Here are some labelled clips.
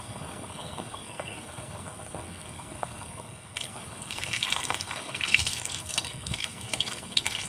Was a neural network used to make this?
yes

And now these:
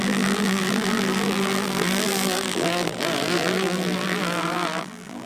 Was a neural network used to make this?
yes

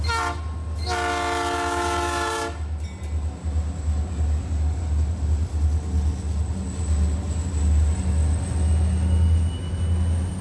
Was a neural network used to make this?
no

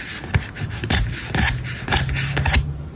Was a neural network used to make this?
no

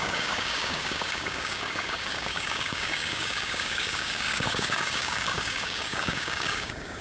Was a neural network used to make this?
yes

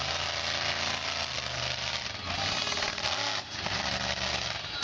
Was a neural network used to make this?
no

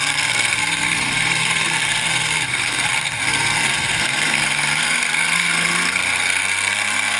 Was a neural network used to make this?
yes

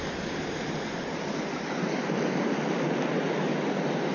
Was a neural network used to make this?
no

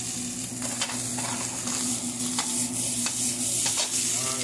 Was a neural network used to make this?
no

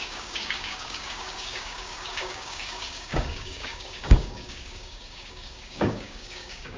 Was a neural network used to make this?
yes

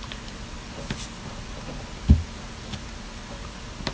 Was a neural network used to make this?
no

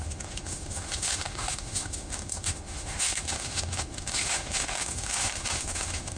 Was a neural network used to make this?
yes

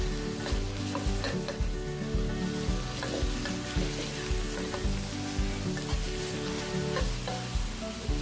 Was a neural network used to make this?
no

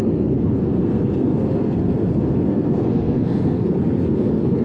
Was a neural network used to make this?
yes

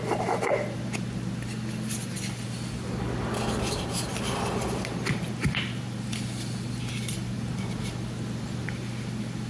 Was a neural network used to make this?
no